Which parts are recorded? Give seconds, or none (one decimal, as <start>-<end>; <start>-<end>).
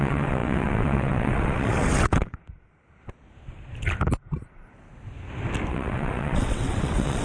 2.4-5.7